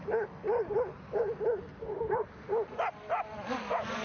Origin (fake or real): real